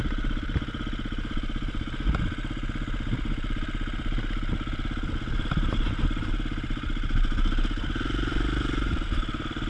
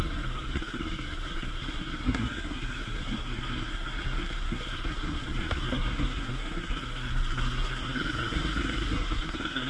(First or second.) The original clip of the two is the first